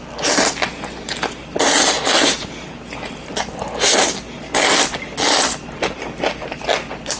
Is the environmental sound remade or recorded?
recorded